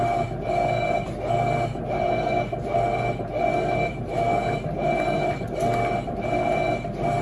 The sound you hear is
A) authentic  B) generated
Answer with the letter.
A